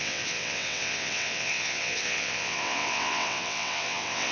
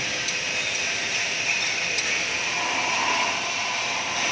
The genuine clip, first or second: second